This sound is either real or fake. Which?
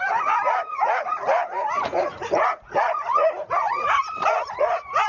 fake